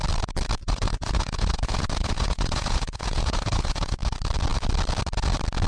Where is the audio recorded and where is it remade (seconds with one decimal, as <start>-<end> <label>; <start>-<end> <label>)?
0.0-0.6 recorded; 0.6-4.0 remade; 4.0-5.7 recorded